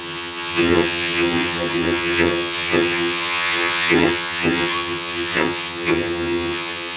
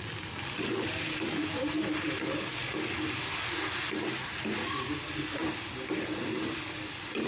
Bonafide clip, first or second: second